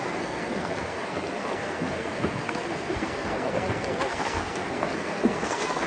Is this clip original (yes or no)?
no